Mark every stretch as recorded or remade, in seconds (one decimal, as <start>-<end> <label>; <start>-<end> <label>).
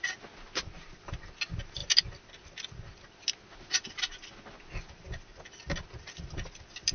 0.0-6.9 recorded